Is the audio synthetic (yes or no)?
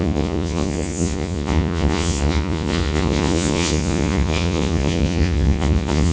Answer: yes